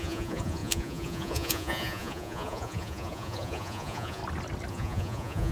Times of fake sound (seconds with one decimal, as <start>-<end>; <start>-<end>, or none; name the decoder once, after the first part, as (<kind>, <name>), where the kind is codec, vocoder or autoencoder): 0.0-4.2 (vocoder, Vocos); 4.7-5.5